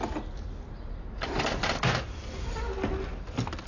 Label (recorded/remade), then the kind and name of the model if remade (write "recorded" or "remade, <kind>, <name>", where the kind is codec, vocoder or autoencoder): recorded